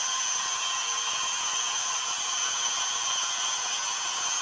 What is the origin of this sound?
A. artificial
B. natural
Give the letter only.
B